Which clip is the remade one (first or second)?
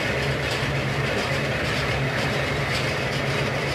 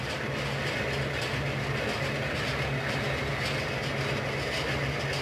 first